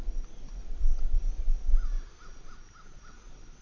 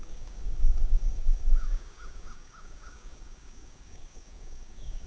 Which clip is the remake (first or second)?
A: second